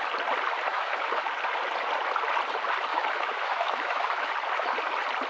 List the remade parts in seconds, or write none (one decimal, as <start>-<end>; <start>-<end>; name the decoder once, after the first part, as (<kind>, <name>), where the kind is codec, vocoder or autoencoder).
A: 0.7-1.3 (autoencoder, DAC-VAE); 2.9-4.3